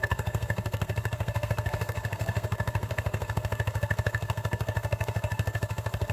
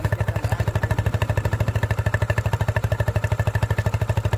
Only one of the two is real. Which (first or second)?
second